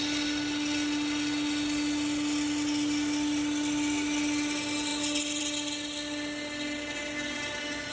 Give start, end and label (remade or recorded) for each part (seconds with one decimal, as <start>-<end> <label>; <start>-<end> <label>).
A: 0.0-7.9 recorded